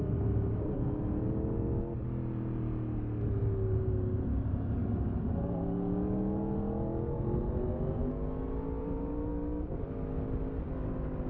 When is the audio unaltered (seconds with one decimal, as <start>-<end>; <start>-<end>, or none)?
0.0-8.8; 9.3-11.3